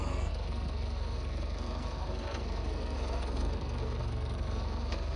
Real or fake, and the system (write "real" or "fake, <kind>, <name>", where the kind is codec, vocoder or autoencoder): fake, codec, SNAC